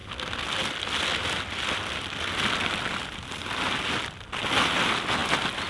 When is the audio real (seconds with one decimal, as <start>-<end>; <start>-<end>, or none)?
0.0-5.7